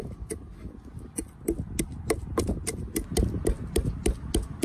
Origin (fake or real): real